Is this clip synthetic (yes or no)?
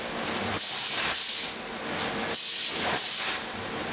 no